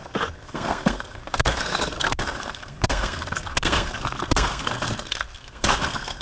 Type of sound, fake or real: fake